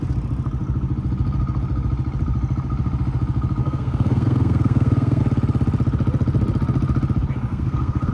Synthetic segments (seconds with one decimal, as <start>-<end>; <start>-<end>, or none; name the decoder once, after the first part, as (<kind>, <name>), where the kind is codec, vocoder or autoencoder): 3.6-5.2 (codec, SNAC); 7.5-8.1